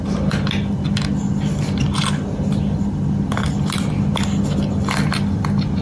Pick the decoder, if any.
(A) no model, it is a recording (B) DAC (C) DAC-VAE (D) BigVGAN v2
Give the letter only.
A